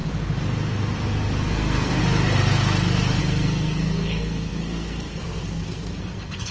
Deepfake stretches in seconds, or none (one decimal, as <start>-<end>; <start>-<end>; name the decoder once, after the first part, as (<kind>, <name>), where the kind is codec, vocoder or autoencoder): 1.5-2.0 (codec, SNAC); 3.2-6.5